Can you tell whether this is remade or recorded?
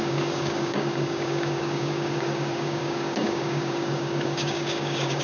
remade